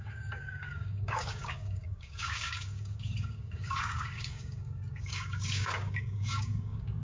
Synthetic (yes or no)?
yes